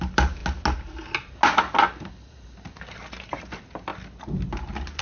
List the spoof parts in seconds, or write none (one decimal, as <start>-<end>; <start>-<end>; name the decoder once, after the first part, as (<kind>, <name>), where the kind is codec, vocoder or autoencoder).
none